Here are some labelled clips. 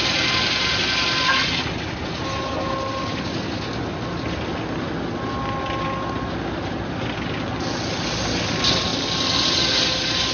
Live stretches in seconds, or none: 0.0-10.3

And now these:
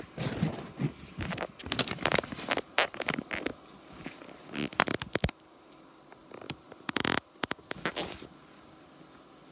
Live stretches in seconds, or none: 0.0-9.5

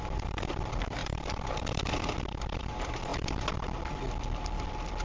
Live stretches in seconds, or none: 0.0-5.0

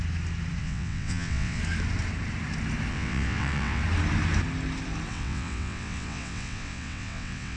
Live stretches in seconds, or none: 0.0-0.6; 1.6-2.9; 3.8-5.1

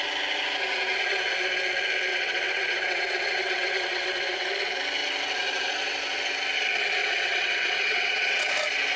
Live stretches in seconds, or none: 0.0-2.1; 4.5-7.0; 8.5-9.0

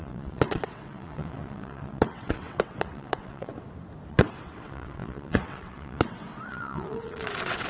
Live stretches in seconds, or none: 3.5-4.1